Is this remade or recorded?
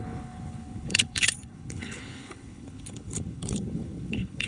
remade